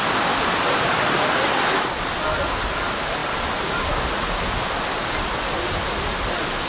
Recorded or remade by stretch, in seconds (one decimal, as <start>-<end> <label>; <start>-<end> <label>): 0.0-6.7 recorded